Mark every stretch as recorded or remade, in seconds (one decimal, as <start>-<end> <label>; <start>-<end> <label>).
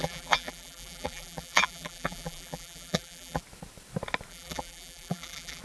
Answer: 0.0-3.4 remade; 3.4-4.3 recorded; 4.3-5.6 remade